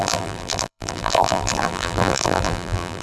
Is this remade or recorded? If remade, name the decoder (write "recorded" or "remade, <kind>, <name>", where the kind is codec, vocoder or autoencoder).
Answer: remade, vocoder, BigVGAN v2